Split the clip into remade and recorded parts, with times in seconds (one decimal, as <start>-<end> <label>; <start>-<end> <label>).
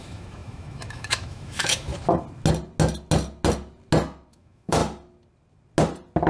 0.0-1.9 remade; 1.9-4.3 recorded; 4.3-4.8 remade; 4.8-6.3 recorded